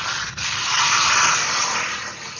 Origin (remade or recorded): recorded